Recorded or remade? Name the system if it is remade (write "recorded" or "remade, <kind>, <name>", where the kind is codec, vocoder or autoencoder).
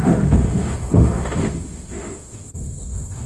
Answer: remade, autoencoder, DAC-VAE